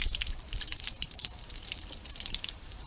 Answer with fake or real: fake